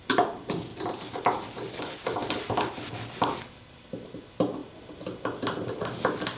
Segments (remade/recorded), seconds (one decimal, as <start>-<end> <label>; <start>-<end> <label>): 0.0-6.4 recorded